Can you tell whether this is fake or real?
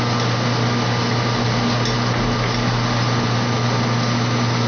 real